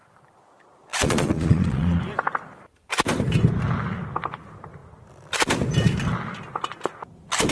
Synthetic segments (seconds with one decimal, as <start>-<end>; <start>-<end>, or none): 0.9-2.0